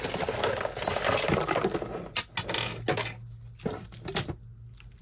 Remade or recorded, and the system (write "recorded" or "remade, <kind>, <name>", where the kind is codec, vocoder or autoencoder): recorded